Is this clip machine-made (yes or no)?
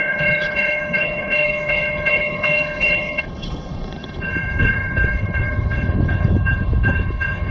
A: yes